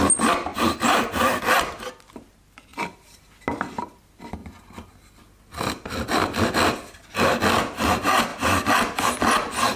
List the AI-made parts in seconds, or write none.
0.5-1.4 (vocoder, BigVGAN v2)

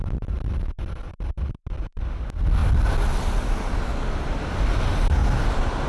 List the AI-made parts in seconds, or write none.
none

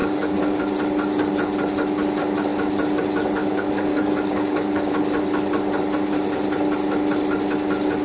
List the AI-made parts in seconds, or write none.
0.0-0.6 (codec, DAC); 3.4-4.8

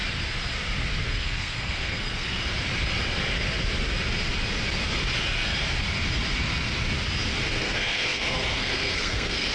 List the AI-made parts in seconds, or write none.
1.0-2.4 (codec, SNAC); 7.5-9.5

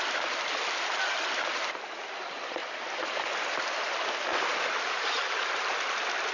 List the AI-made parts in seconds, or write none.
4.3-5.8 (vocoder, BigVGAN v2)